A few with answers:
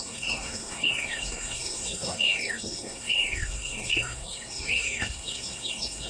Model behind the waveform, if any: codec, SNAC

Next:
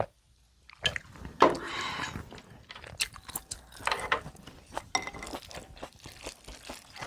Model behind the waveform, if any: none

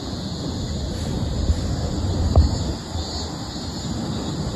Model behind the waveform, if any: none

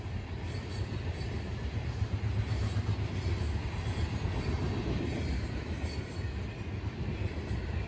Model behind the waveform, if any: none